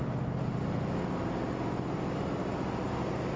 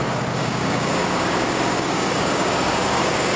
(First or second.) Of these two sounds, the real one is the first